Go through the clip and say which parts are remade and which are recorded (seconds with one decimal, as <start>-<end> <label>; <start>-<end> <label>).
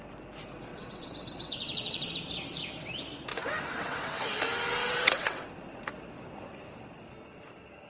0.0-0.7 recorded; 0.7-2.1 remade; 2.1-3.3 recorded; 3.3-4.2 remade; 4.2-4.8 recorded; 4.8-5.5 remade; 5.5-7.9 recorded